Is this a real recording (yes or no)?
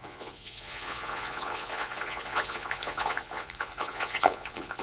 no